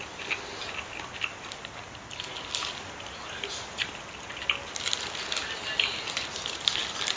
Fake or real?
real